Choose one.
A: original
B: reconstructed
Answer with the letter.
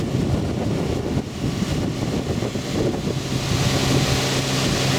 A